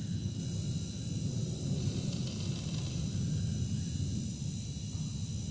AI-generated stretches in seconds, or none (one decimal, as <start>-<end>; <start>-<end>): 0.6-3.6; 4.3-5.0